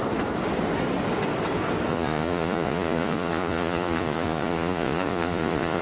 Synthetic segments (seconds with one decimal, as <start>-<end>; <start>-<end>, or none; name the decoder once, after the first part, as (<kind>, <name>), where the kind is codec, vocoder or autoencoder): 1.9-5.8 (vocoder, Vocos)